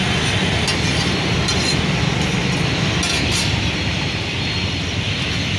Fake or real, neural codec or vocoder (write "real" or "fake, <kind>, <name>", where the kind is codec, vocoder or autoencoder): real